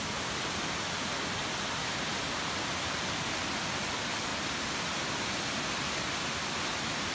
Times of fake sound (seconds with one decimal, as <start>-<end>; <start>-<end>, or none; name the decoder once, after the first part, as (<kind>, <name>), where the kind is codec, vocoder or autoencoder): none